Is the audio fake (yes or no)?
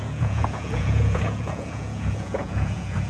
yes